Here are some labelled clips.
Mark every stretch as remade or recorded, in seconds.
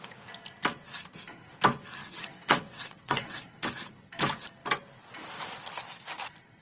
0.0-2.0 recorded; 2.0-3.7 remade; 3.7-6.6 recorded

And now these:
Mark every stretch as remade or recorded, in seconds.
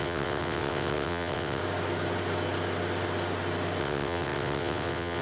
0.0-1.6 remade; 1.6-3.8 recorded; 3.8-5.2 remade